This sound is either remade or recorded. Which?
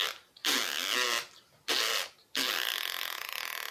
remade